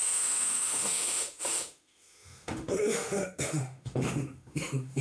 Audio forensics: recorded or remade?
remade